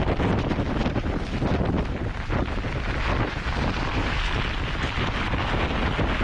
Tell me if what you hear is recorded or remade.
recorded